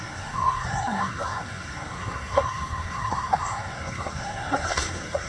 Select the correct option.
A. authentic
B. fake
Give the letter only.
B